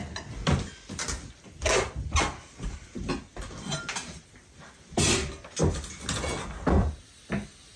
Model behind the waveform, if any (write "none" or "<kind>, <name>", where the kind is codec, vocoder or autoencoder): none